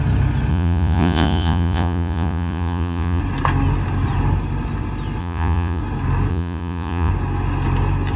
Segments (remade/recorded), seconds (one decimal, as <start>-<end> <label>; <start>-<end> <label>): 0.0-0.5 recorded; 0.5-3.2 remade; 3.2-5.2 recorded; 5.2-5.8 remade; 5.8-6.3 recorded; 6.3-7.1 remade; 7.1-8.2 recorded